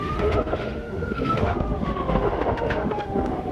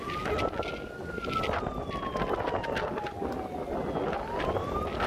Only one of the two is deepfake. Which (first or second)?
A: first